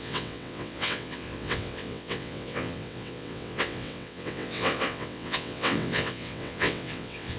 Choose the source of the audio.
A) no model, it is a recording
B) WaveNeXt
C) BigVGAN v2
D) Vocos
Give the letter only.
B